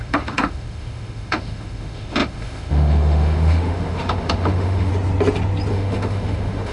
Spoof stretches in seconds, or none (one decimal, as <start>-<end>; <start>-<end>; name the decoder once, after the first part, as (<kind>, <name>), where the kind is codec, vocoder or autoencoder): 0.0-4.9 (autoencoder, DAC-VAE); 5.7-6.7